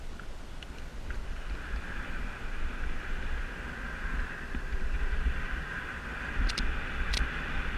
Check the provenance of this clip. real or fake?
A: real